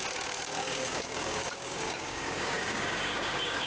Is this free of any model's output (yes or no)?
no